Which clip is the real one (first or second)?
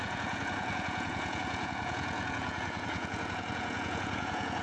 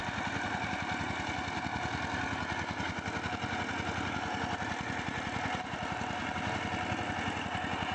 second